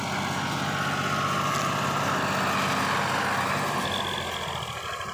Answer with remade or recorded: recorded